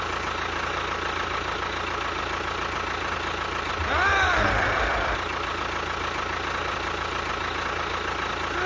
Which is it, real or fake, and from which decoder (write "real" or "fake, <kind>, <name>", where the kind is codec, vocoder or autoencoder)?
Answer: real